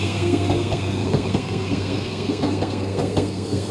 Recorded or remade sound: remade